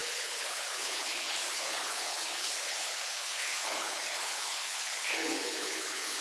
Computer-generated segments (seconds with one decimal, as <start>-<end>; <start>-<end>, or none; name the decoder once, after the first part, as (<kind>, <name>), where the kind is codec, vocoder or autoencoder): 0.0-6.2 (codec, HILCodec)